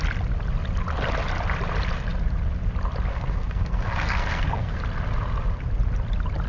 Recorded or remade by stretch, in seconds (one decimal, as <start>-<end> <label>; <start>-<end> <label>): 0.0-3.1 recorded; 3.1-4.8 remade; 4.8-6.5 recorded